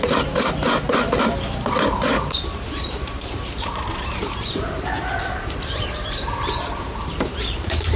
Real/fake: fake